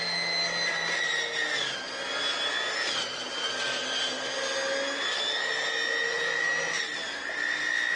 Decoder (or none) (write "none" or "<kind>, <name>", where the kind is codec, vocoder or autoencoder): none